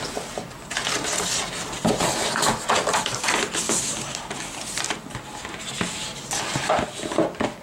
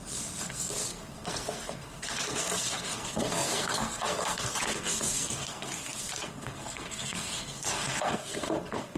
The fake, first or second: second